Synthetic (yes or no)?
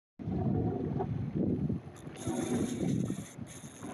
no